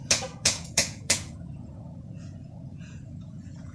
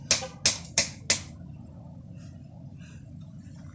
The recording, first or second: second